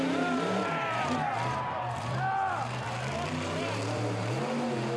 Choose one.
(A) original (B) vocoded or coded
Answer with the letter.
B